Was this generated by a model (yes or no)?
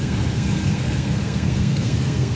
yes